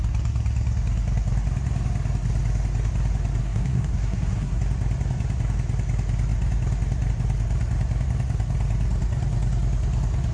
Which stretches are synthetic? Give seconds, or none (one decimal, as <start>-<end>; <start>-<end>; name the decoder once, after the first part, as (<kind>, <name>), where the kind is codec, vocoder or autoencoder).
3.4-4.6 (codec, SNAC)